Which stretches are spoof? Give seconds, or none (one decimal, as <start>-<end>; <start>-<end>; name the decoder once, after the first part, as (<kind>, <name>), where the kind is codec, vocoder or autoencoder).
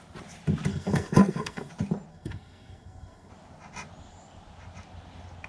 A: 0.7-1.7 (codec, SNAC); 2.1-3.3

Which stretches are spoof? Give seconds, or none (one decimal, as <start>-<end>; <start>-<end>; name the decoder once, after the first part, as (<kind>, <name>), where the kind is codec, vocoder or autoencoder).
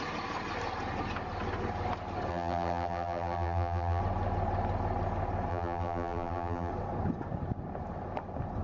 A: 2.3-4.0 (vocoder, BigVGAN v2); 5.5-6.7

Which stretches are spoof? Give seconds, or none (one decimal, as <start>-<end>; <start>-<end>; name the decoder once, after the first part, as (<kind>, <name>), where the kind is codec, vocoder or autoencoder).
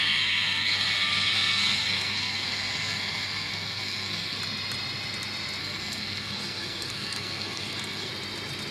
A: 0.0-4.4 (codec, SNAC); 5.6-8.1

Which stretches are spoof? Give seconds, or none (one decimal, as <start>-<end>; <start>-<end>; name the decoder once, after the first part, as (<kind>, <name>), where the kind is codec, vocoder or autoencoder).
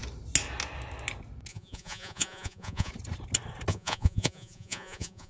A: 1.5-2.9 (vocoder, Vocos); 3.7-5.3